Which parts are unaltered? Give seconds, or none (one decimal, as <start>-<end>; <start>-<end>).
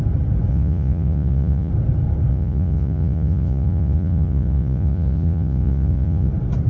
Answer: 0.0-0.5; 1.7-2.3; 6.3-6.7